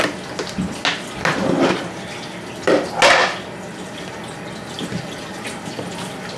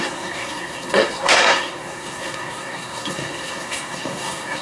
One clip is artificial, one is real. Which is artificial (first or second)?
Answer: second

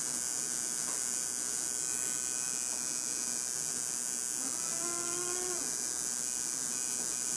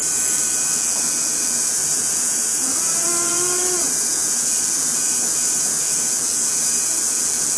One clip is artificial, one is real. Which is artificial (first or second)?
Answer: second